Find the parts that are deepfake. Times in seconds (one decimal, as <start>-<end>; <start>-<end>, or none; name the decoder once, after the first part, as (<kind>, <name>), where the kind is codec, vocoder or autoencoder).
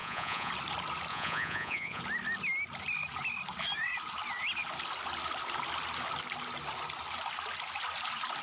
0.0-0.5 (vocoder, Vocos); 1.1-2.0